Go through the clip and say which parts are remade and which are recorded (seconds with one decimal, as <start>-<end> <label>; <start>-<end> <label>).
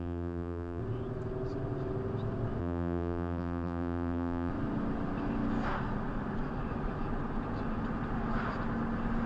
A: 0.0-0.8 remade; 0.8-2.6 recorded; 2.6-4.5 remade; 4.5-9.3 recorded